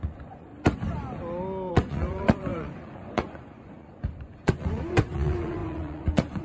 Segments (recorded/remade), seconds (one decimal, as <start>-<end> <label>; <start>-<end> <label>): 0.0-0.5 remade; 0.5-1.7 recorded; 1.7-6.4 remade